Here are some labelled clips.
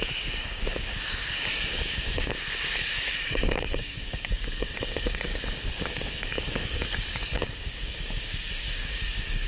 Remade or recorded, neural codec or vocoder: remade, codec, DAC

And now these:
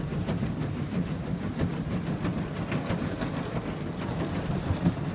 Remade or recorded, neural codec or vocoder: recorded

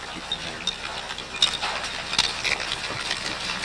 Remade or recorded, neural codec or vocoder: recorded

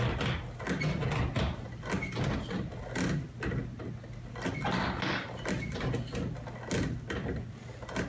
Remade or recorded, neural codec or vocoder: recorded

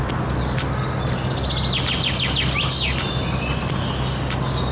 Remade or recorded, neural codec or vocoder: recorded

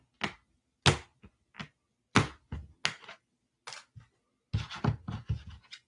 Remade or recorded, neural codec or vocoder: recorded